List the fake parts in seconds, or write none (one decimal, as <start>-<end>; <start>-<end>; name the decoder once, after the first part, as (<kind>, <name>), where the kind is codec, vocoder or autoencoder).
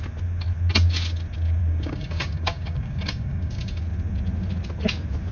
1.6-3.8 (codec, DAC)